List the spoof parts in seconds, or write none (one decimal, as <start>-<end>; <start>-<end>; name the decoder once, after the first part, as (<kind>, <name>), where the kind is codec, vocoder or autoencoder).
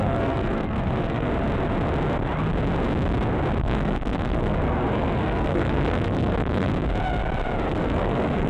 0.0-1.3 (codec, SNAC); 3.6-6.7; 7.7-8.5